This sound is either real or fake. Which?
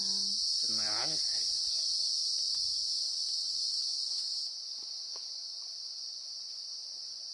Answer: real